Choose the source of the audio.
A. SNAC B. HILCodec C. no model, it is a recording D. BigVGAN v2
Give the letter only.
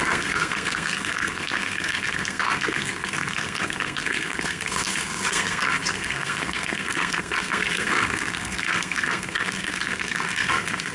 A